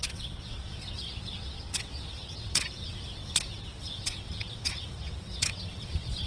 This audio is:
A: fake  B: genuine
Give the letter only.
A